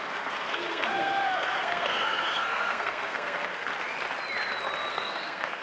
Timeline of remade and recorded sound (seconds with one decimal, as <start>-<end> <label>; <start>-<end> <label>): 0.0-3.7 remade; 3.7-4.9 recorded; 4.9-5.6 remade